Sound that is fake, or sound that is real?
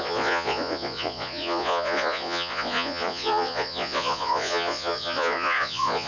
fake